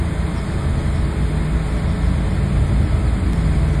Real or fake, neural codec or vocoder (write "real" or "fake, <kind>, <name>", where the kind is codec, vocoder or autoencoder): real